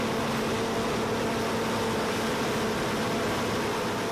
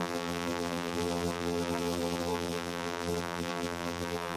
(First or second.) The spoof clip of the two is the second